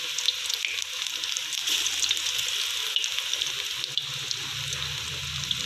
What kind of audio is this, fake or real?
real